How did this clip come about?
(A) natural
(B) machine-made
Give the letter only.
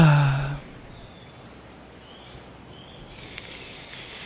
A